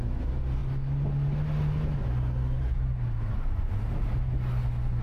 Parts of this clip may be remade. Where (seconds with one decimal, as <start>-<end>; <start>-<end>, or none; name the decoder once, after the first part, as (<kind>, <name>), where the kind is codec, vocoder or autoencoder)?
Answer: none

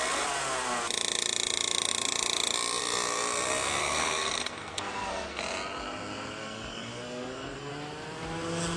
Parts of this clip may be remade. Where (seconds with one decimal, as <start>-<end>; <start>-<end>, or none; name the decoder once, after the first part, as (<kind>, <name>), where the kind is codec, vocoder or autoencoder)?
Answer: 3.8-5.4 (codec, SNAC); 6.4-7.7

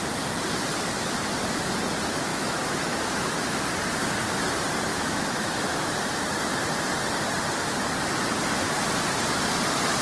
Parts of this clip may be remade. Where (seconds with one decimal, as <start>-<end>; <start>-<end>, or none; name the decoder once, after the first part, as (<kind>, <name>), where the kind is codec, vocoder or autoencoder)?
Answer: 2.3-3.6 (autoencoder, DAC-VAE); 4.9-5.9

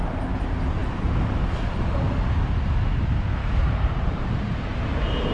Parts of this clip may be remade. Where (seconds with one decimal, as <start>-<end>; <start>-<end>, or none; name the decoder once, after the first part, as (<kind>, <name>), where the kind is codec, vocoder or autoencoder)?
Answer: 3.4-4.2 (vocoder, BigVGAN v2)

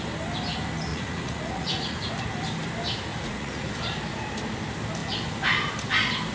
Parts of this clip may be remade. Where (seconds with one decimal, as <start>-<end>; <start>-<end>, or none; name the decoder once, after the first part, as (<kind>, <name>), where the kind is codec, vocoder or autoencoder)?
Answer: 0.9-2.1 (vocoder, Vocos); 3.1-3.7

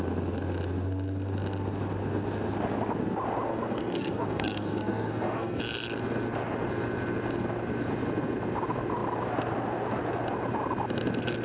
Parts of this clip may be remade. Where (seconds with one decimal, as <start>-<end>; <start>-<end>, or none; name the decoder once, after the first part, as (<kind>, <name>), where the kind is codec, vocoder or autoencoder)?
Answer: 3.5-5.6 (codec, SNAC)